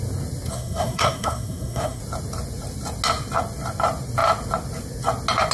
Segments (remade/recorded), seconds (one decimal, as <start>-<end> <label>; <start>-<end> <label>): 0.0-0.5 recorded; 0.5-2.0 remade; 2.0-5.5 recorded